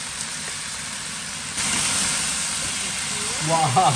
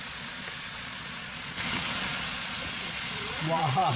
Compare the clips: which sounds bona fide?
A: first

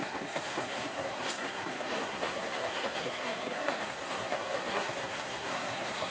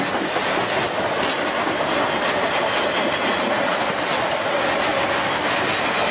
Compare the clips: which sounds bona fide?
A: second